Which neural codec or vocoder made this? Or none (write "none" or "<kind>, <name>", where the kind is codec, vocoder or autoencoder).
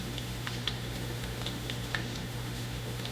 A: autoencoder, DAC-VAE